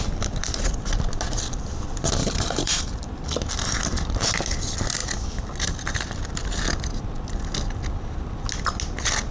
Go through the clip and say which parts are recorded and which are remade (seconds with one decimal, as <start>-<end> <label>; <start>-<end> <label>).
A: 0.0-2.2 recorded; 2.2-2.8 remade; 2.8-9.3 recorded